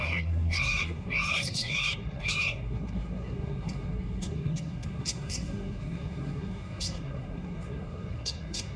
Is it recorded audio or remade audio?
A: remade